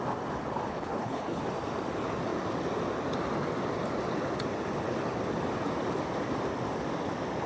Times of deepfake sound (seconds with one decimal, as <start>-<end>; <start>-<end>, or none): 0.7-1.4